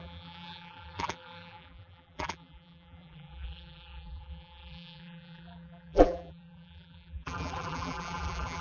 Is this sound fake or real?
fake